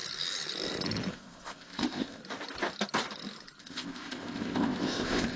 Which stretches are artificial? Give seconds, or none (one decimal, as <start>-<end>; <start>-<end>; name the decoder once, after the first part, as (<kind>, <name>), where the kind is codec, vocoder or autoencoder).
1.1-2.2 (codec, ZipCodec); 3.6-5.4